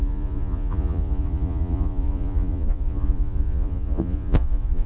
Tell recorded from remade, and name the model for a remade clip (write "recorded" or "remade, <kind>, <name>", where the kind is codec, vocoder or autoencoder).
remade, vocoder, Vocos